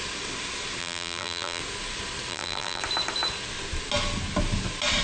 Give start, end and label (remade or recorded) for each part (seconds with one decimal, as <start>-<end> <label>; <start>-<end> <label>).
0.0-0.8 recorded; 0.8-1.6 remade; 1.6-2.3 recorded; 2.3-2.8 remade; 2.8-5.0 recorded